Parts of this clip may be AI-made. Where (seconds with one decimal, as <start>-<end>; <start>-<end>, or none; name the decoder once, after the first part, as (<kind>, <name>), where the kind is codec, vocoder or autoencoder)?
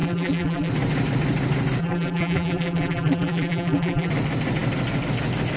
0.0-0.7 (vocoder, BigVGAN v2); 1.8-4.1